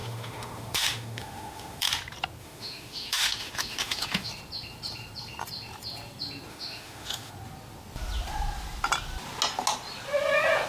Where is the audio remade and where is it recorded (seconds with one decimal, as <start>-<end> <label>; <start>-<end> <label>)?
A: 0.0-1.9 remade; 1.9-2.4 recorded; 2.4-4.3 remade; 4.3-6.5 recorded; 6.5-7.3 remade; 7.3-10.7 recorded